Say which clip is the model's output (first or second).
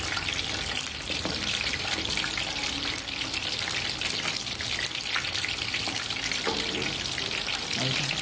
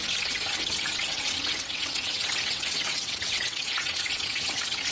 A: second